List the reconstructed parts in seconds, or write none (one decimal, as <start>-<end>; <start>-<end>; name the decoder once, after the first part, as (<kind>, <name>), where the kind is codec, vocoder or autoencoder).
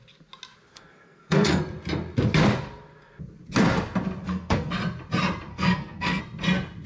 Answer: 0.7-1.6 (codec, SNAC); 4.2-4.7; 5.5-6.2